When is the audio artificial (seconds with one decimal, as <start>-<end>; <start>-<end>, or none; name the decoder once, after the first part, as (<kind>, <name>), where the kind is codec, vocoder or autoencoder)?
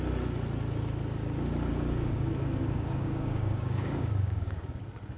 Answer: 1.7-4.8 (codec, DAC)